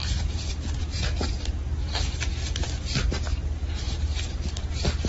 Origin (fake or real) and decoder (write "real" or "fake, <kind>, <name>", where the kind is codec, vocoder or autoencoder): real